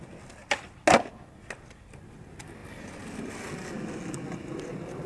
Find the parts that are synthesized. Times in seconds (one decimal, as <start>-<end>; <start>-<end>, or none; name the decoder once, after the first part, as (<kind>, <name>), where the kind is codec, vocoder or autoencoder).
none